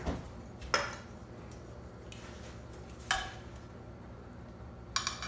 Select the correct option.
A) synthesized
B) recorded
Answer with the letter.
B